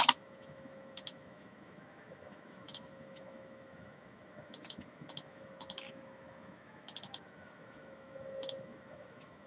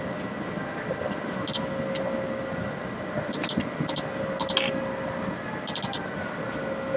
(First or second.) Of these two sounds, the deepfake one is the first